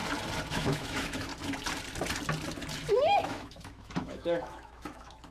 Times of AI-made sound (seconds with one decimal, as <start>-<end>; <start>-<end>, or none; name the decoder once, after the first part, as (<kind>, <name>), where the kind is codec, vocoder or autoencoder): 0.5-1.3 (autoencoder, DAC-VAE); 2.9-5.3